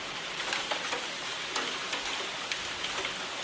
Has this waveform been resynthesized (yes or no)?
no